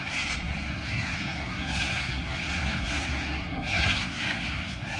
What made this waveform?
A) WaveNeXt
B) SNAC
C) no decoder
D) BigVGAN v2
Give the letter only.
B